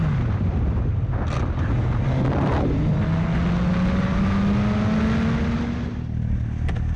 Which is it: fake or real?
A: real